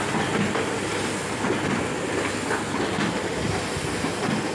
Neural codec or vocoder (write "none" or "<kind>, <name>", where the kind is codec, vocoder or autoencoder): none